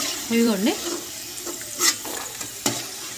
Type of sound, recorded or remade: remade